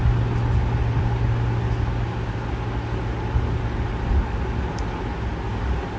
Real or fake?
real